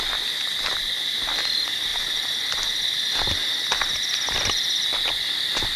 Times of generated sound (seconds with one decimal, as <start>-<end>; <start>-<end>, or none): none